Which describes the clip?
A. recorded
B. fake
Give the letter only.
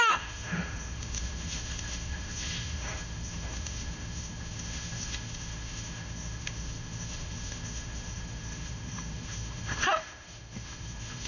B